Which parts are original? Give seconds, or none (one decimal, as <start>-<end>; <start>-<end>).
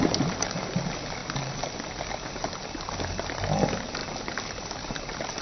0.0-5.4